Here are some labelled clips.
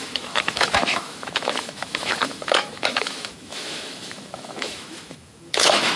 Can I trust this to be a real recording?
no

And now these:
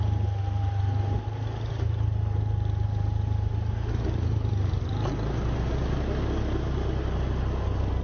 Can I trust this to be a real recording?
yes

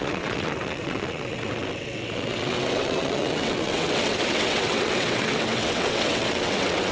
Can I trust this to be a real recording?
no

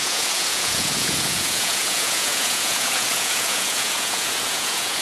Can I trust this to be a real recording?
no